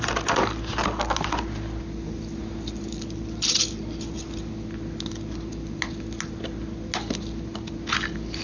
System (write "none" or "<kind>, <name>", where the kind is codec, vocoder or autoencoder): none